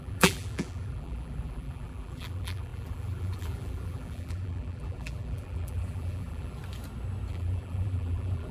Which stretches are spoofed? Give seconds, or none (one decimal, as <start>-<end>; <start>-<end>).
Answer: 0.0-6.6; 7.3-8.5